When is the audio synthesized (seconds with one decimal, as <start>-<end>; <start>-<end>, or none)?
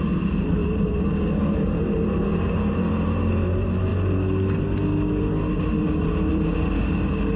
0.0-3.9; 6.3-7.4